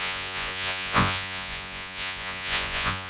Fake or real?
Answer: fake